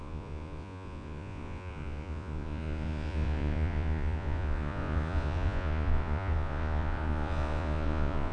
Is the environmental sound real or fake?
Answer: fake